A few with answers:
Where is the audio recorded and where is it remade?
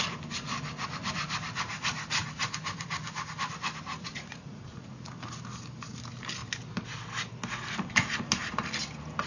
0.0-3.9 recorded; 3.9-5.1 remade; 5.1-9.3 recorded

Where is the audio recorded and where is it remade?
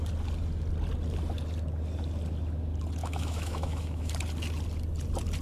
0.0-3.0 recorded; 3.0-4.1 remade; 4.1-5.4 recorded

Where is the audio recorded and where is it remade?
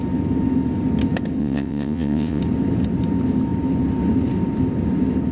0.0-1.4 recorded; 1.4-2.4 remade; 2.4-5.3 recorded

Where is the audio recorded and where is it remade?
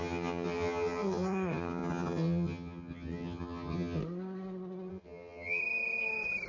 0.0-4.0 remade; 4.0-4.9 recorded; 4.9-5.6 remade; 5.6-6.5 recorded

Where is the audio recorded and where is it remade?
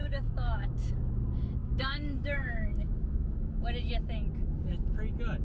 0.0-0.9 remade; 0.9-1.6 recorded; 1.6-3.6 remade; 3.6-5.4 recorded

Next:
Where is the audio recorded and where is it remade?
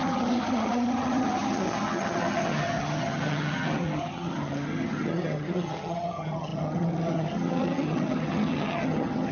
0.0-9.3 remade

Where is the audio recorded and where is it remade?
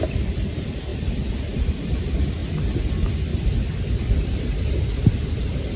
0.0-0.9 remade; 0.9-1.7 recorded; 1.7-2.4 remade; 2.4-2.9 recorded; 2.9-5.8 remade